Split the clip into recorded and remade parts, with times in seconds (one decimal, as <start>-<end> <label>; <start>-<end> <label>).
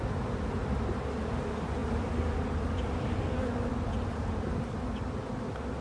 0.0-1.8 recorded; 1.8-3.7 remade; 3.7-5.8 recorded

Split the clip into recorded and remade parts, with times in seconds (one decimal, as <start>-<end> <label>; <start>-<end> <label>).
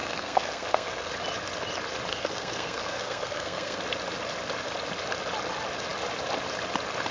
0.0-1.1 remade; 1.1-2.1 recorded; 2.1-3.8 remade; 3.8-7.1 recorded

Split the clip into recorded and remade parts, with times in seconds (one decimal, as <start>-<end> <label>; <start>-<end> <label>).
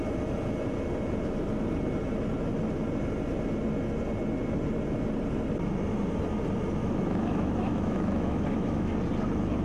0.0-6.8 recorded; 6.8-8.9 remade; 8.9-9.6 recorded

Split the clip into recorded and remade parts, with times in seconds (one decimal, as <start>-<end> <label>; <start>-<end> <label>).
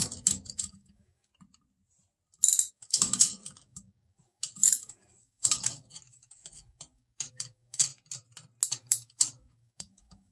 0.0-1.3 remade; 1.3-2.7 recorded; 2.7-7.9 remade; 7.9-8.7 recorded; 8.7-10.3 remade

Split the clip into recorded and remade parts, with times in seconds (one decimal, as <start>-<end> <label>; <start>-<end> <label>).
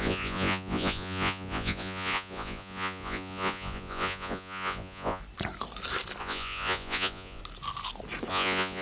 0.0-5.2 remade; 5.2-6.2 recorded; 6.2-7.4 remade; 7.4-8.3 recorded; 8.3-8.8 remade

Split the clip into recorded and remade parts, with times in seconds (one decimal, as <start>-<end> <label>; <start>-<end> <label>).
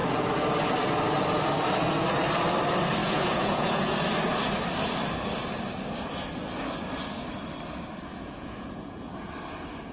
0.0-3.0 recorded; 3.0-3.8 remade; 3.8-8.1 recorded; 8.1-9.1 remade; 9.1-9.9 recorded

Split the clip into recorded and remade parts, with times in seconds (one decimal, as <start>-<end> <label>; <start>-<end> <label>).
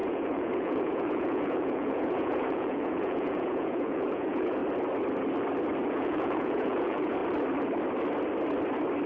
0.0-4.6 remade; 4.6-5.9 recorded; 5.9-7.2 remade; 7.2-9.1 recorded